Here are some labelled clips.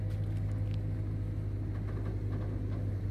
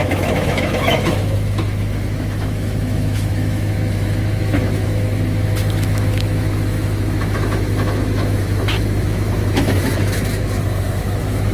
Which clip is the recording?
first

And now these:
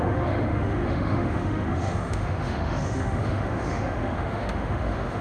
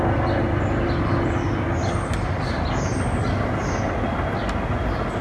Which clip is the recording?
second